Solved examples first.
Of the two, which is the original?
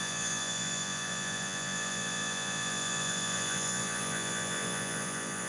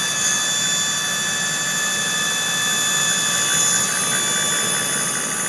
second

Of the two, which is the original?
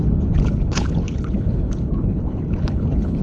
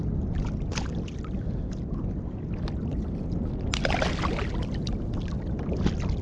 second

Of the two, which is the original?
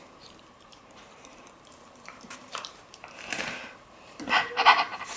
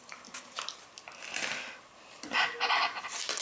second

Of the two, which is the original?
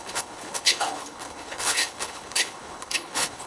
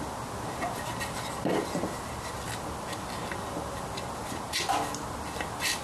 second